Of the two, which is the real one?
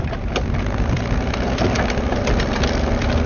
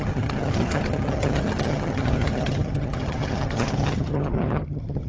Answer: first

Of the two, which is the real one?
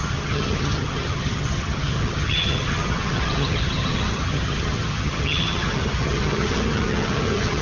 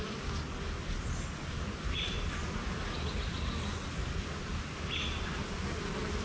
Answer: second